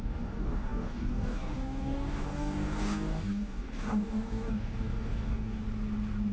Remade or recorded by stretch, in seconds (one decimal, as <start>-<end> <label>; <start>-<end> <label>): 0.0-5.6 remade; 5.6-6.3 recorded